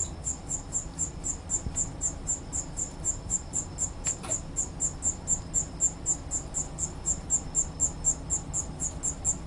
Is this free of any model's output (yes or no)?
yes